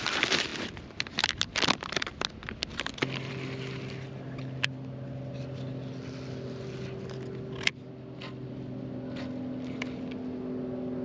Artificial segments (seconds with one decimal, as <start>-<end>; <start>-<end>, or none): none